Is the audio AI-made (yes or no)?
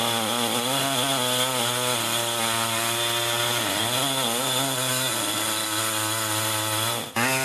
no